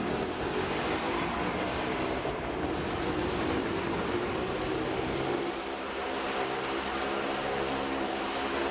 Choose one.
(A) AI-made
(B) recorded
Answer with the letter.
B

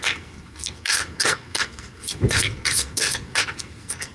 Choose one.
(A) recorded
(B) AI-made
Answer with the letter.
B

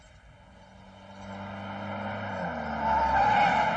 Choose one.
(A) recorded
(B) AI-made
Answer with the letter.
A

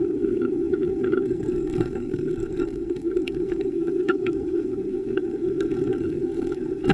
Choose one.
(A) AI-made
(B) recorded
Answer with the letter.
A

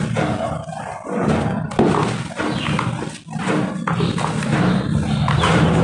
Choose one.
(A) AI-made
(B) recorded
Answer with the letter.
B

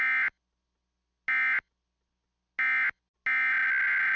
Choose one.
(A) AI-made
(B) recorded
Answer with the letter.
B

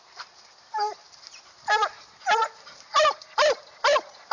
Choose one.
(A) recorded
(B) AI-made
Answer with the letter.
A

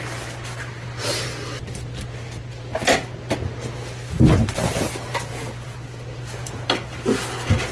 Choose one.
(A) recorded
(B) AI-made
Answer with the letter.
A